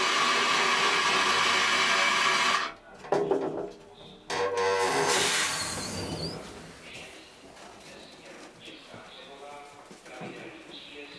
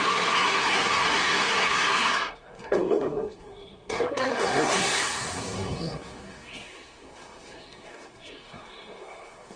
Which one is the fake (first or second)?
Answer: second